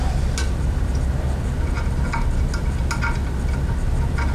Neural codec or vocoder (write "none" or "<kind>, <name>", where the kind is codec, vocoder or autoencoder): none